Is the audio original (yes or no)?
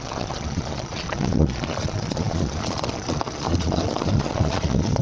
no